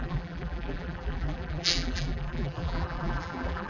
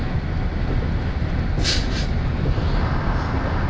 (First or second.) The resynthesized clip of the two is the first